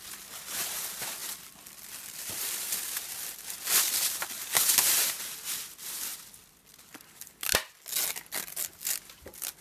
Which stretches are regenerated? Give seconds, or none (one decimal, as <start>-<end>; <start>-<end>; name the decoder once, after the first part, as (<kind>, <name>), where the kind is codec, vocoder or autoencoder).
1.2-4.3 (vocoder, BigVGAN v2); 6.1-7.1